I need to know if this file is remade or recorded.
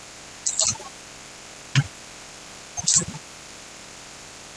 recorded